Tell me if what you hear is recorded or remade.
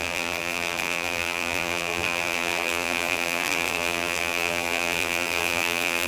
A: remade